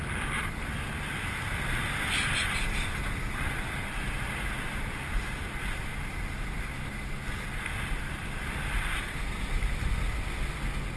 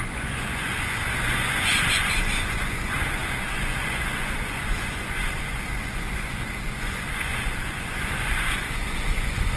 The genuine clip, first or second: first